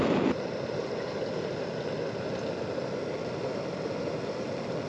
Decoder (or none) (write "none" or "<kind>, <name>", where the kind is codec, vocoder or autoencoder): none